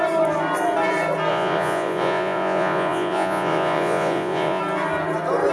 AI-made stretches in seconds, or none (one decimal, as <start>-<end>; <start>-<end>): 1.3-4.6